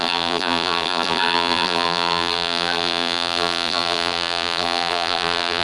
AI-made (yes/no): yes